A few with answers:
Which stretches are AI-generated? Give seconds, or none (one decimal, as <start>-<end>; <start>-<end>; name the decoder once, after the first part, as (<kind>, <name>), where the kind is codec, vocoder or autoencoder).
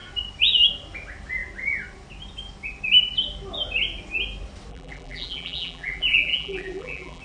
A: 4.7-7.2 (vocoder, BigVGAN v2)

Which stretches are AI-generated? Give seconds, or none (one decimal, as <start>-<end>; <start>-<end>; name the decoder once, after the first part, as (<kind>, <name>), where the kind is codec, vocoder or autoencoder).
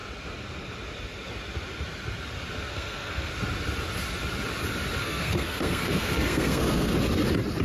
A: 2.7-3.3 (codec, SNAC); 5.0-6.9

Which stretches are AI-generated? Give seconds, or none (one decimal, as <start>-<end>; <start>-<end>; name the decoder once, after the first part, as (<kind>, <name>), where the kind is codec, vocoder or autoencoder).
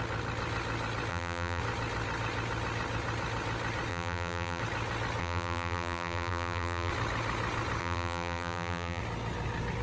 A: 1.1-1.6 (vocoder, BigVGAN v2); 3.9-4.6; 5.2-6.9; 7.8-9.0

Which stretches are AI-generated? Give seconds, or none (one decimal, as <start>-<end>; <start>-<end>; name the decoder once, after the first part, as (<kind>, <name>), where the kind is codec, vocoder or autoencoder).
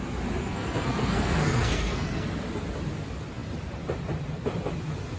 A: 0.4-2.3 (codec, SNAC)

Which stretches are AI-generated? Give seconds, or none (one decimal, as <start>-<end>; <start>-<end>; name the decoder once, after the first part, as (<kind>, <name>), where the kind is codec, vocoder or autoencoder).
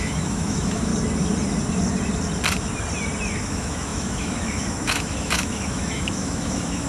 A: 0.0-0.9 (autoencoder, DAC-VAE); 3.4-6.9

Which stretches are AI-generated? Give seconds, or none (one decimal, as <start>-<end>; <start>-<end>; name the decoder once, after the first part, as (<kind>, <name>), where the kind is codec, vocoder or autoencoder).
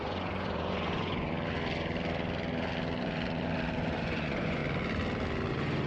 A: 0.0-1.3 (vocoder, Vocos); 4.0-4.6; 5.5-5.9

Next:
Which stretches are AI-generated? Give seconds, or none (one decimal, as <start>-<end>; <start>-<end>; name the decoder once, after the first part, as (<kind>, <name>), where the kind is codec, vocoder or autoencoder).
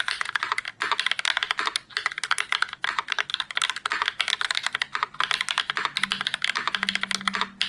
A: none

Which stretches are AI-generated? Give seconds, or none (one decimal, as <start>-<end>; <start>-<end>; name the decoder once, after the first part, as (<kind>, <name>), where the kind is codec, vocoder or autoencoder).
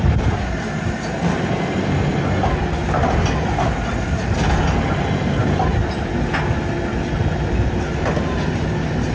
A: none